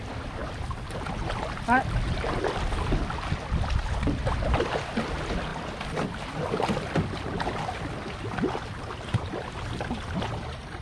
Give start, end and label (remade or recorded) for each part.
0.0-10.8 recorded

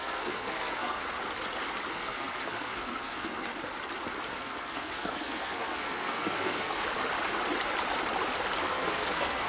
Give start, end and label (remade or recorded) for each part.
0.0-1.0 remade; 1.0-1.9 recorded; 1.9-3.5 remade; 3.5-4.3 recorded; 4.3-6.8 remade; 6.8-8.6 recorded; 8.6-9.5 remade

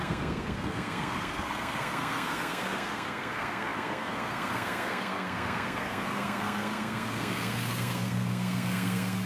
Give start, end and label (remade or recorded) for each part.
0.0-9.3 remade

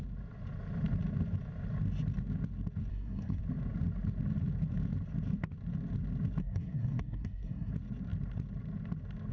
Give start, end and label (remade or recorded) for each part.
0.0-2.9 recorded; 2.9-3.4 remade; 3.4-6.4 recorded; 6.4-7.7 remade; 7.7-9.3 recorded

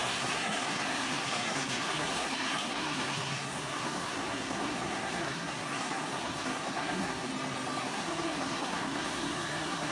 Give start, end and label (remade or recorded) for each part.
0.0-7.3 remade; 7.3-7.8 recorded; 7.8-9.9 remade